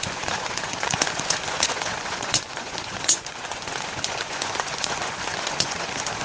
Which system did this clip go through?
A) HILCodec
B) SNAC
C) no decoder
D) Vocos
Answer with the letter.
D